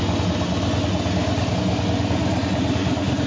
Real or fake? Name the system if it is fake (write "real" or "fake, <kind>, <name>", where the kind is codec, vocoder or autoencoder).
real